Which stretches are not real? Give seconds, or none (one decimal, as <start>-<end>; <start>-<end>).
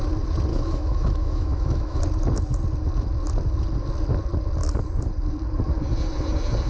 0.5-2.0